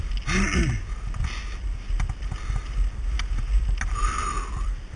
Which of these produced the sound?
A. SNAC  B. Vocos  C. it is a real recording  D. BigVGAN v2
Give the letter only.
C